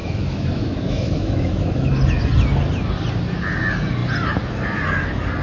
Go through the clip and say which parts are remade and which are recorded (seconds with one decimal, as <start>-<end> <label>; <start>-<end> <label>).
0.0-1.9 remade; 1.9-5.4 recorded